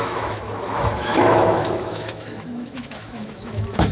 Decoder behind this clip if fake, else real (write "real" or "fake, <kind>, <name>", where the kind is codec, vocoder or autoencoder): fake, autoencoder, DAC-VAE